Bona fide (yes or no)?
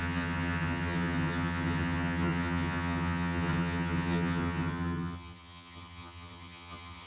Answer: no